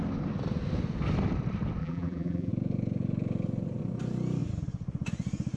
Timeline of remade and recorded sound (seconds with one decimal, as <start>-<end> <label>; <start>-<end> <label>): 0.0-1.8 recorded; 1.8-2.5 remade; 2.5-5.6 recorded